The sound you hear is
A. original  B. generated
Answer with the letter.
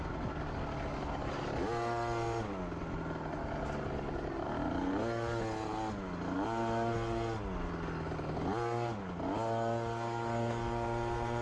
A